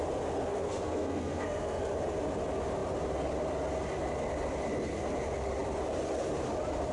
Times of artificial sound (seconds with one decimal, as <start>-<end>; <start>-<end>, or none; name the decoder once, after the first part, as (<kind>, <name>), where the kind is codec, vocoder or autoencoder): 0.5-1.8 (codec, SNAC)